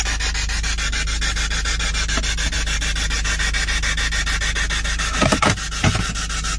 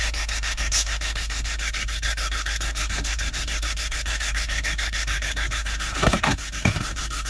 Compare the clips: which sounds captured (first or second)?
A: first